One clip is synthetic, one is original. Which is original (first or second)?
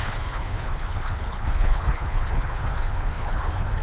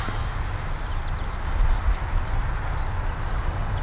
second